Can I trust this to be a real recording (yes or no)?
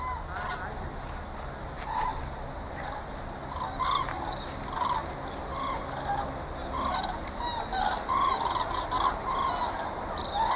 yes